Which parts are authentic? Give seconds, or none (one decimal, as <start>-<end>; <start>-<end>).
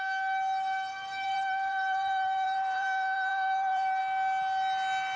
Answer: 0.0-0.9; 4.0-5.2